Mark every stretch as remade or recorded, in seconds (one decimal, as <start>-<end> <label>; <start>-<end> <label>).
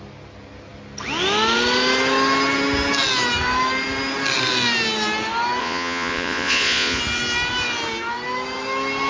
0.0-5.6 recorded; 5.6-7.0 remade; 7.0-9.1 recorded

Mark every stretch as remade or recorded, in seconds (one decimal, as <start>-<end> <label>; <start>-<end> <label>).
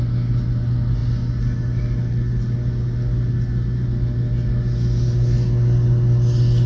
0.0-6.7 recorded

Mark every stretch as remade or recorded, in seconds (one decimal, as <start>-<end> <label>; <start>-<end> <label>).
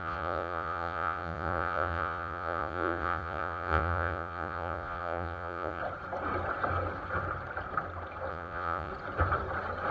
0.0-5.8 remade; 5.8-8.3 recorded; 8.3-8.9 remade; 8.9-9.9 recorded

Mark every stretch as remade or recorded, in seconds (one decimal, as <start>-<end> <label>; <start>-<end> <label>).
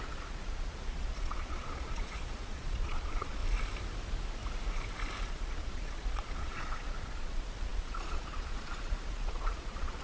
0.0-3.4 remade; 3.4-5.3 recorded; 5.3-10.0 remade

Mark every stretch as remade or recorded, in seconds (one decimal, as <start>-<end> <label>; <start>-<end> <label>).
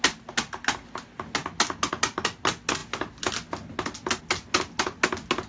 0.0-5.5 recorded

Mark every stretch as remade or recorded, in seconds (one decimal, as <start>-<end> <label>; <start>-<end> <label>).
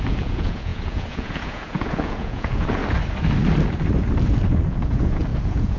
0.0-2.8 remade; 2.8-4.7 recorded; 4.7-5.8 remade